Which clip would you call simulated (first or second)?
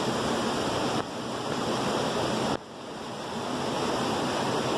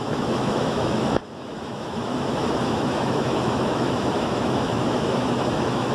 second